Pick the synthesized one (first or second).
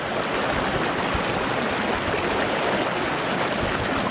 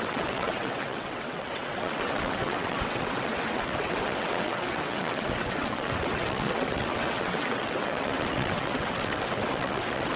second